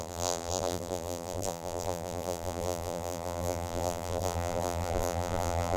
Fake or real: fake